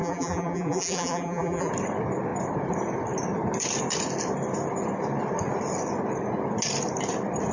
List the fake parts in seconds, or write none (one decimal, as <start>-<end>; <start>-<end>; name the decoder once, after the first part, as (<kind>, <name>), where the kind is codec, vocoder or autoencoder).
0.0-1.7 (vocoder, BigVGAN v2)